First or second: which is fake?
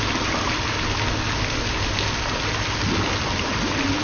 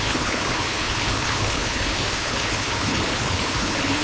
second